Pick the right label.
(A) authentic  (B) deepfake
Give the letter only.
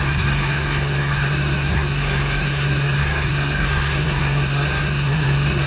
B